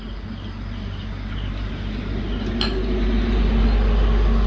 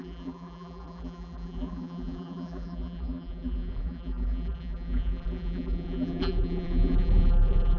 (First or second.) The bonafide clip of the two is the first